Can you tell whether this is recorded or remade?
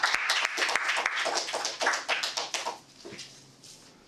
recorded